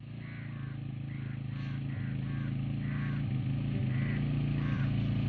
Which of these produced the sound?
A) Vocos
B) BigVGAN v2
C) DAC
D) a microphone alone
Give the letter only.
D